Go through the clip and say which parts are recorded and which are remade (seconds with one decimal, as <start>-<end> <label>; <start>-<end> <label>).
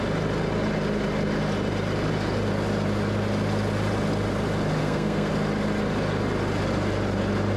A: 0.0-4.8 recorded; 4.8-5.3 remade; 5.3-7.6 recorded